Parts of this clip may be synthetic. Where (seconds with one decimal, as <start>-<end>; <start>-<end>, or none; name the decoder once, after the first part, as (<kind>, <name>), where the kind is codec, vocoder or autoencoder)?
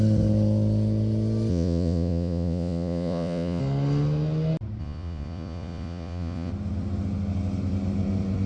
1.5-3.6 (vocoder, Vocos); 4.8-6.5